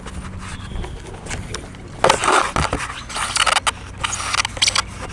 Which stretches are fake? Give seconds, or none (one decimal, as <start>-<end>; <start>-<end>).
none

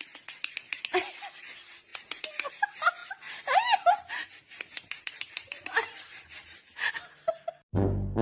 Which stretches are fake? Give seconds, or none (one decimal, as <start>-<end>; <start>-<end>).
1.9-2.5; 3.0-6.9

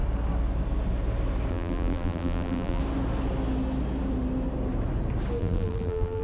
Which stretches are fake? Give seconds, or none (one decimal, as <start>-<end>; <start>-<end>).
1.5-2.8; 5.4-6.2

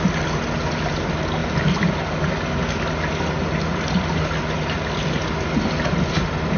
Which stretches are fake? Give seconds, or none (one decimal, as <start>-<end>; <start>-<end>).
none

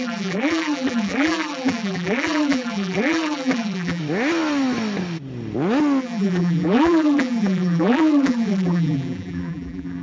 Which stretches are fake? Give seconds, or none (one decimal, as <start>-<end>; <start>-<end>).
0.0-4.0; 6.0-10.0

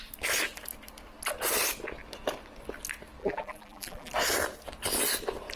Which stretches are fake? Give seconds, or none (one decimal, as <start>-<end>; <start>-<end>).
3.2-4.1

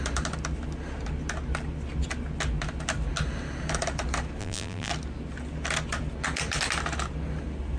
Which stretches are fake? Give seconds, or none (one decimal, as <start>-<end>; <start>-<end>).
4.4-4.9